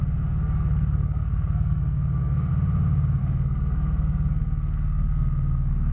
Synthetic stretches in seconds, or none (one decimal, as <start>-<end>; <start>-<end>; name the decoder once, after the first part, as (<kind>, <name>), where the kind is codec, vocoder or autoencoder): 0.0-2.5 (codec, SNAC); 3.2-5.9